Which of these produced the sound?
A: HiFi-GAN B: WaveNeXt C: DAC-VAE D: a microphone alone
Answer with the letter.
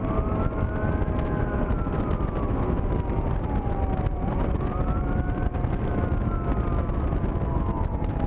D